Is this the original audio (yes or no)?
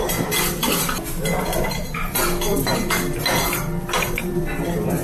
yes